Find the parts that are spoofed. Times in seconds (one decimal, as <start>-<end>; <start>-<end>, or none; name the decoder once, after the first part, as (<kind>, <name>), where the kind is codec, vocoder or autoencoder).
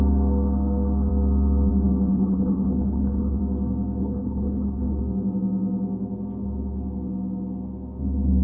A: 2.1-3.4 (codec, HILCodec); 4.0-5.0